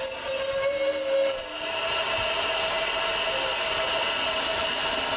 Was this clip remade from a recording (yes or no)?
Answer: no